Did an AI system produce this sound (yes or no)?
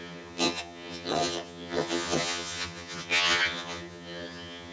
yes